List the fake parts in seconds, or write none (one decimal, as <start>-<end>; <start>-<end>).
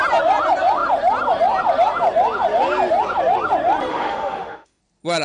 3.9-4.8